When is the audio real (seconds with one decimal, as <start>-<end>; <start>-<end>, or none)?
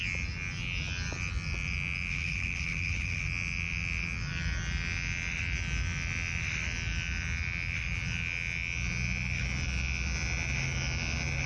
0.0-2.1; 3.2-11.5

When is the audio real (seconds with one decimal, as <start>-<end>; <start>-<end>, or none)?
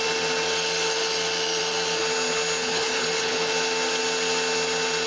0.0-2.6; 3.5-5.1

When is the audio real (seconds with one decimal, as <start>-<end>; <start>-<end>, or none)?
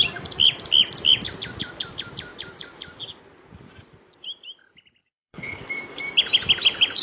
0.0-5.0; 5.6-7.0